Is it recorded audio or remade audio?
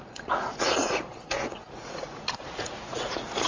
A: remade